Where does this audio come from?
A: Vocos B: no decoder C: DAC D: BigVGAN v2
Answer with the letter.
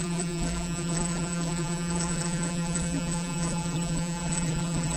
D